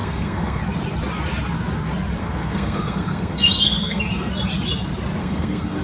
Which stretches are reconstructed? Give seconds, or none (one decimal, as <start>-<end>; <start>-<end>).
0.0-0.6; 2.2-4.0; 5.2-5.8